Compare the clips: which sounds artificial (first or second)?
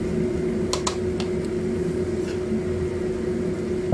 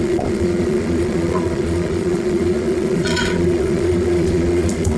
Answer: second